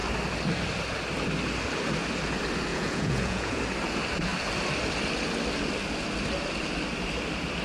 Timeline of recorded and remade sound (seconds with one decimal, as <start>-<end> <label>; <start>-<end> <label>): 0.0-2.7 recorded; 2.7-3.6 remade; 3.6-7.6 recorded